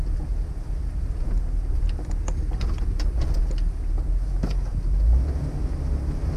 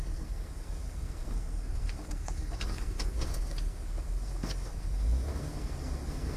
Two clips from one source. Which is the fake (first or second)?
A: second